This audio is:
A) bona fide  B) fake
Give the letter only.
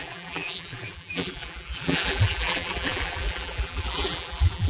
B